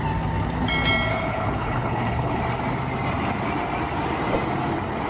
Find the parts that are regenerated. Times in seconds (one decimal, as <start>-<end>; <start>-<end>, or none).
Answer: 1.1-2.4